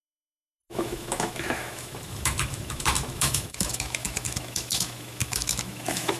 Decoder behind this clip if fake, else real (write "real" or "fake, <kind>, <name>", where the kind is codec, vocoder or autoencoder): fake, autoencoder, DAC-VAE